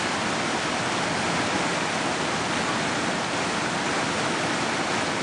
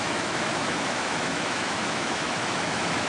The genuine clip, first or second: first